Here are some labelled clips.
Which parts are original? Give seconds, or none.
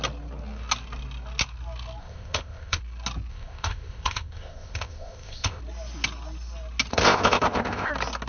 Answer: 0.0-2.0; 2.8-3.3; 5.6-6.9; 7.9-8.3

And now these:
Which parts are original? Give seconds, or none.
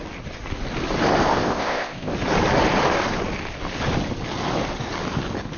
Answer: 0.0-1.3; 2.1-5.6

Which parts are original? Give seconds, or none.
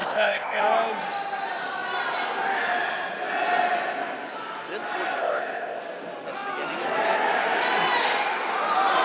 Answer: 0.6-5.2; 5.8-9.0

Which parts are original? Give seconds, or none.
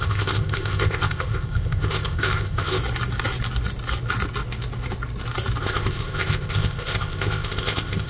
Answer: 2.8-5.6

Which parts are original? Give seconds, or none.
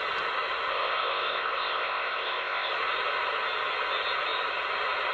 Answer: 0.0-0.7; 2.7-5.1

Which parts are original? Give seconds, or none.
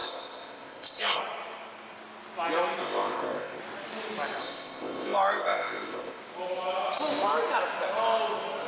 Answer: 1.2-2.8; 3.6-4.4; 6.2-8.7